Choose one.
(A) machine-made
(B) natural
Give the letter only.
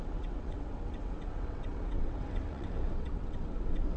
A